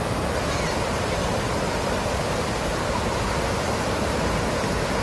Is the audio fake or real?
fake